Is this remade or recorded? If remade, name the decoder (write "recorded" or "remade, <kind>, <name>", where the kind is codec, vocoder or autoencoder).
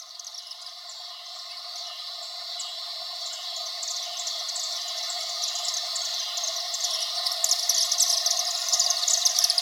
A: recorded